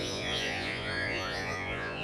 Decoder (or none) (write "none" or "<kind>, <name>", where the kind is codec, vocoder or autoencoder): vocoder, Vocos